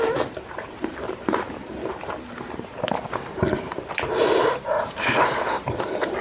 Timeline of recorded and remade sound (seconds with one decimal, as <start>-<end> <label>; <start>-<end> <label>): 0.0-1.6 remade; 1.6-2.3 recorded; 2.3-6.2 remade